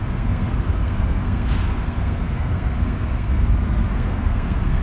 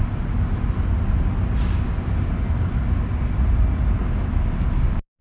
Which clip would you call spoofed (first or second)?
first